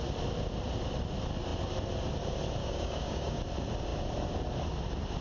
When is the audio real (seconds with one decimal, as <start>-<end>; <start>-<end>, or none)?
0.0-2.6; 3.4-5.2